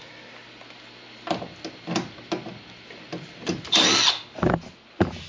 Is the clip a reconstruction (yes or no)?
no